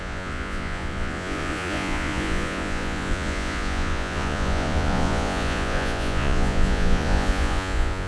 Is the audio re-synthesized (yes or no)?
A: yes